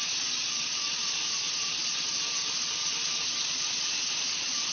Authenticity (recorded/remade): recorded